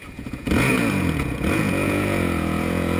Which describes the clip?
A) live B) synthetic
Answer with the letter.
B